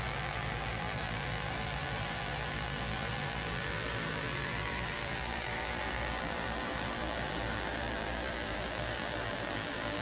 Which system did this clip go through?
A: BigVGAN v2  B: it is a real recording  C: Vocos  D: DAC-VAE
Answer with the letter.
A